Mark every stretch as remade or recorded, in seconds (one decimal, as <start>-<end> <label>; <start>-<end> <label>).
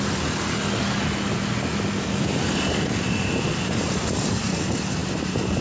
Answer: 0.0-5.6 recorded